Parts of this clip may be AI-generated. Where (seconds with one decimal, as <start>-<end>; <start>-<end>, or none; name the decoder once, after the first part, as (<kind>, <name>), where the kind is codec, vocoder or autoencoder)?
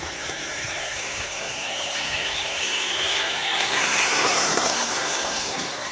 0.0-5.9 (codec, SNAC)